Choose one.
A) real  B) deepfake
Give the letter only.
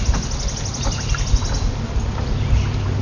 A